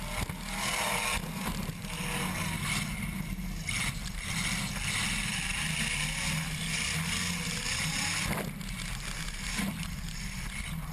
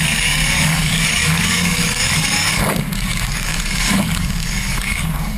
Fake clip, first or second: second